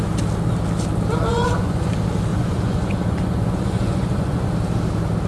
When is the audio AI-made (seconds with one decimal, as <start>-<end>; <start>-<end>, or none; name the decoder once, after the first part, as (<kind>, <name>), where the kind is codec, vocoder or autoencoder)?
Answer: 1.3-1.9 (vocoder, Vocos); 2.3-4.5